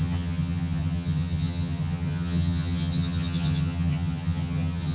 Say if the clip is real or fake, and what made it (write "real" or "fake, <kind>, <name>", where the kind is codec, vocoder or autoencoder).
fake, vocoder, HiFi-GAN